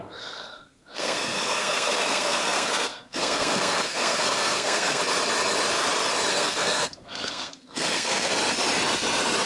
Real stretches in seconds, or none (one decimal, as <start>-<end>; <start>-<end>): 5.0-6.3; 8.3-9.5